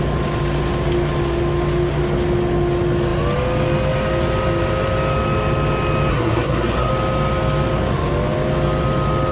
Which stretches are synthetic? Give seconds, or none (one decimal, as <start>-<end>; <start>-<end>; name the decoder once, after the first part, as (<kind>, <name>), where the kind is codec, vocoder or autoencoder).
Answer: 6.1-6.9 (codec, SNAC)